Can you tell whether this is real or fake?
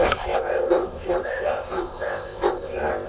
fake